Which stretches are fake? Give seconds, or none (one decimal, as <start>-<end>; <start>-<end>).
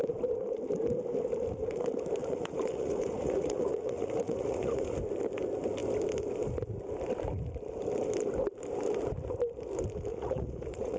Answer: 2.2-5.0; 10.1-11.0